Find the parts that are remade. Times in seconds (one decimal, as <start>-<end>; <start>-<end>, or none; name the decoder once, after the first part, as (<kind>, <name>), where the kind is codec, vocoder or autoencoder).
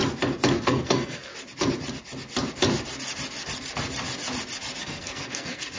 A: 0.6-1.3 (codec, SNAC); 4.8-5.8